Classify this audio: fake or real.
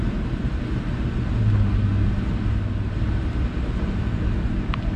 real